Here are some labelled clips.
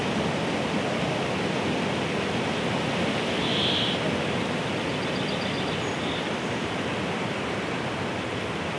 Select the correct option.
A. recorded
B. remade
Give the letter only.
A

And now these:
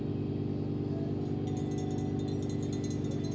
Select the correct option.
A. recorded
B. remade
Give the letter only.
A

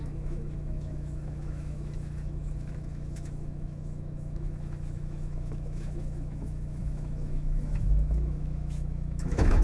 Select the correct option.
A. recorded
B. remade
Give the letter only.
B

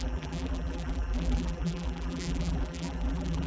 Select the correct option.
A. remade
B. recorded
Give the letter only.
A